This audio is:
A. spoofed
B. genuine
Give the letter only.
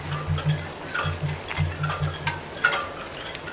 B